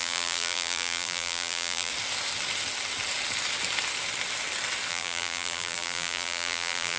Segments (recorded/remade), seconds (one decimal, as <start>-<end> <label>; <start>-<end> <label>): 0.0-1.9 remade; 1.9-4.9 recorded; 4.9-7.0 remade